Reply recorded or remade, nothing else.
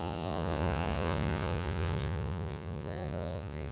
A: remade